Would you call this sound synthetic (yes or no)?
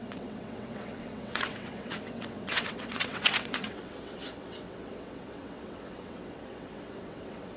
yes